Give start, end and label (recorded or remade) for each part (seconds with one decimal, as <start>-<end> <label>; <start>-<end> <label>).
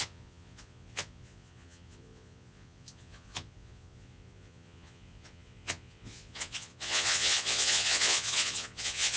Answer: 0.0-9.2 remade